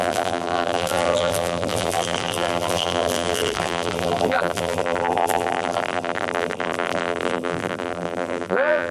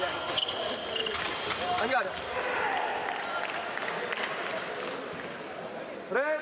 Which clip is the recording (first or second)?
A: second